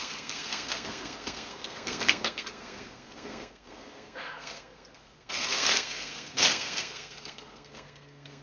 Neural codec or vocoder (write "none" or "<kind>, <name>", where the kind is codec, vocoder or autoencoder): codec, SNAC